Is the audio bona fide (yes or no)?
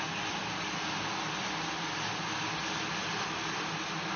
yes